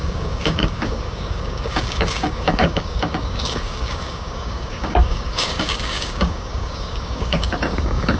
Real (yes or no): no